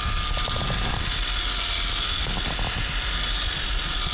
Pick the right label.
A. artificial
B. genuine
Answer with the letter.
B